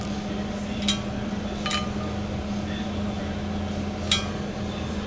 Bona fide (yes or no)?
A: yes